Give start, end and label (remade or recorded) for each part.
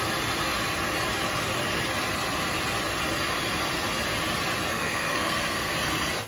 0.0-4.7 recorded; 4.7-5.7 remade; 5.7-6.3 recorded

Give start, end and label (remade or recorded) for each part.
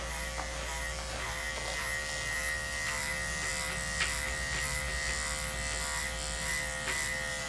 0.0-7.5 recorded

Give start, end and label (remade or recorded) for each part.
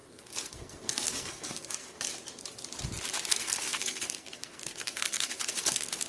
0.0-2.1 remade; 2.1-3.3 recorded; 3.3-6.1 remade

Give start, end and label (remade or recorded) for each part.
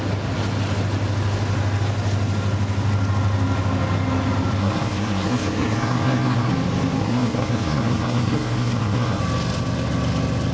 0.0-4.6 recorded; 4.6-6.5 remade; 6.5-7.0 recorded; 7.0-9.2 remade; 9.2-10.5 recorded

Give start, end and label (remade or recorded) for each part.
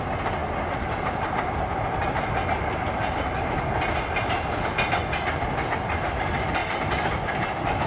0.0-7.9 recorded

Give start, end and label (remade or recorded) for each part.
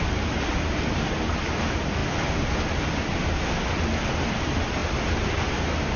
0.0-6.0 recorded